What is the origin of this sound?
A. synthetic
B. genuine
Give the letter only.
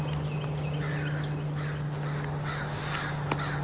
B